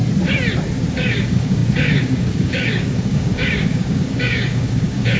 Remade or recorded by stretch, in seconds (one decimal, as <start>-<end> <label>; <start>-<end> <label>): 0.0-0.9 recorded; 0.9-5.2 remade